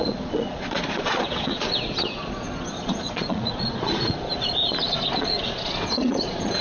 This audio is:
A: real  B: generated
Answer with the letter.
B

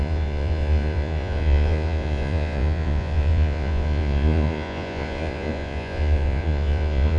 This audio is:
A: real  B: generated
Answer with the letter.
B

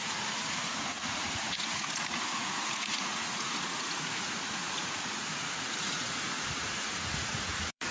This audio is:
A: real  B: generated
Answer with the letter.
B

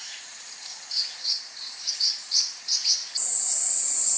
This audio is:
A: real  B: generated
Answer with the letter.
B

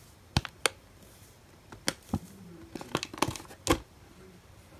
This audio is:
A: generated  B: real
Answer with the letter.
B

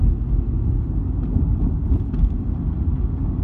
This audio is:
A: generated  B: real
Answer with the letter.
B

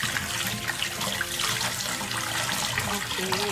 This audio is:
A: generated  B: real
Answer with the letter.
B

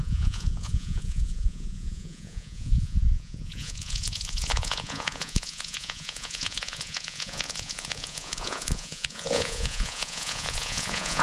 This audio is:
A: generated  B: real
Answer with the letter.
A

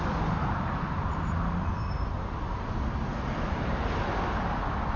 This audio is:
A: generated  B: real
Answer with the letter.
B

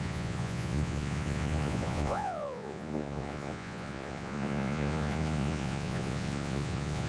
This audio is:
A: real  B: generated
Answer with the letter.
B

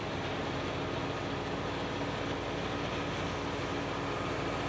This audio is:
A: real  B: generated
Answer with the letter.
A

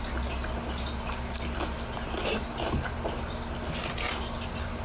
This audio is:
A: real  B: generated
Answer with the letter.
A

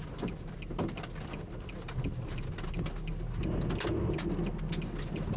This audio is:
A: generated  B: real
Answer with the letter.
B